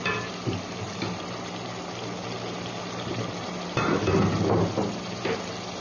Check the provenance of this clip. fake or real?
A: real